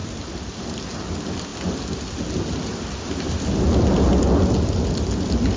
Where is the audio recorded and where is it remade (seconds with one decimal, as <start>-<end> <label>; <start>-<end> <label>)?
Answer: 0.0-5.6 recorded